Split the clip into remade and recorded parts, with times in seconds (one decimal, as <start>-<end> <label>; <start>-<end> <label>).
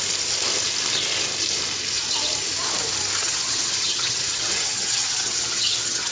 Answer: 0.0-3.2 recorded; 3.2-6.1 remade